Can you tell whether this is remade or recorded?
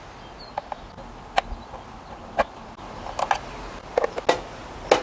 recorded